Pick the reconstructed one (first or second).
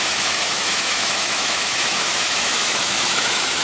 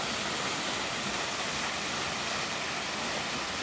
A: first